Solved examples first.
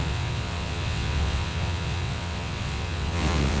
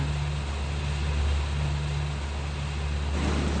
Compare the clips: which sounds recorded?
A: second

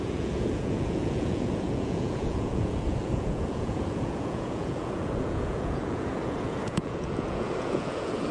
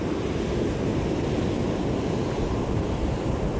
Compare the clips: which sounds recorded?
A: second